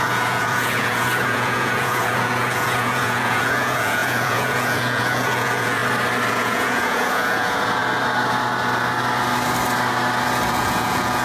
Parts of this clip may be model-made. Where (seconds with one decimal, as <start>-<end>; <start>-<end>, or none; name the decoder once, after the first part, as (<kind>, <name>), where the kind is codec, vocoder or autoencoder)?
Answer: 0.0-5.8 (vocoder, Vocos); 6.3-7.8; 10.5-11.2